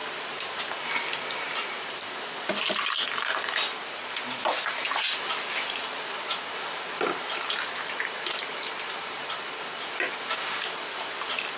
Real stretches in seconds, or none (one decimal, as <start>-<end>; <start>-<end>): 0.0-11.6